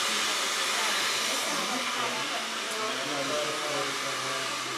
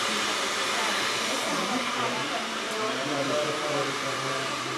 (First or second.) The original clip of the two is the first